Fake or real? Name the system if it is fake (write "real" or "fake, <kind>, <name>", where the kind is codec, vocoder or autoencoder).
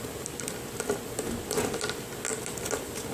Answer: real